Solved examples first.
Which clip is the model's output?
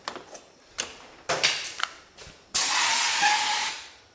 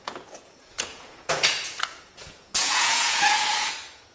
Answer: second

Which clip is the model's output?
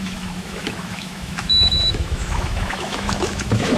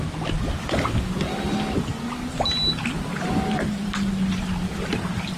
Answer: first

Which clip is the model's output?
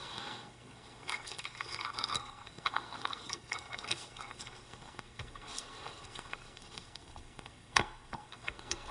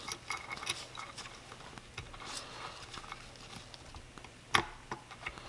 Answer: first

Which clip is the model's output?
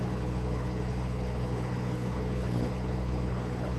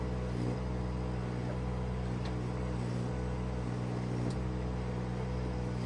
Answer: first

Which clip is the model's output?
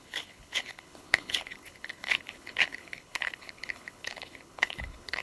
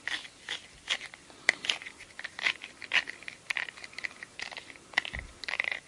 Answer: first